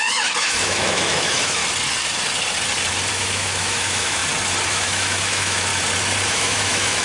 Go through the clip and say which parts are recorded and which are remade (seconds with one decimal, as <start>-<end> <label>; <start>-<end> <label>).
0.0-1.6 remade; 1.6-3.1 recorded; 3.1-4.2 remade; 4.2-4.7 recorded; 4.7-5.7 remade; 5.7-6.3 recorded; 6.3-7.0 remade